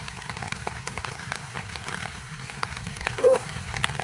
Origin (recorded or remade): remade